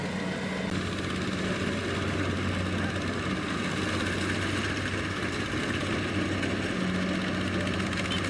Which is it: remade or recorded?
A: recorded